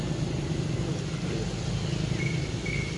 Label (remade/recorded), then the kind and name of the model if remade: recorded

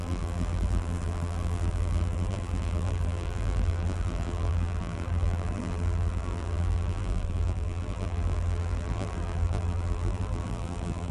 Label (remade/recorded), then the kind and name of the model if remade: remade, vocoder, BigVGAN v2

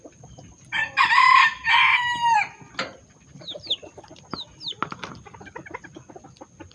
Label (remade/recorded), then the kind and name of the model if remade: recorded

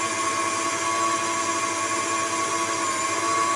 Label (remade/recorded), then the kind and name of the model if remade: recorded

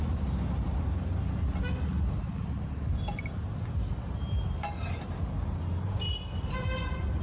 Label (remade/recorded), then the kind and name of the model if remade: recorded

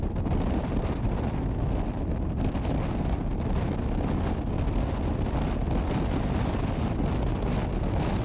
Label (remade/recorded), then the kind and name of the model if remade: recorded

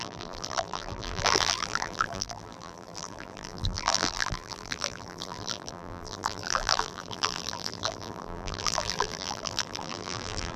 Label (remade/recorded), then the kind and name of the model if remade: remade, vocoder, BigVGAN v2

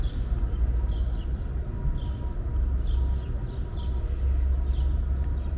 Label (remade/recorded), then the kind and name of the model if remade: recorded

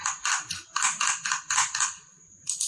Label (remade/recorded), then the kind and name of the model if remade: recorded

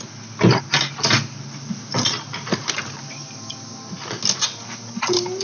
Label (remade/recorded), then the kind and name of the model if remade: recorded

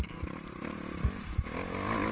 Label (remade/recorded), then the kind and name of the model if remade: remade, vocoder, BigVGAN v2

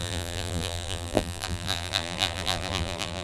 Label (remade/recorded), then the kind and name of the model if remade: remade, vocoder, BigVGAN v2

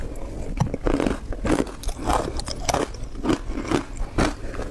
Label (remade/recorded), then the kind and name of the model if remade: recorded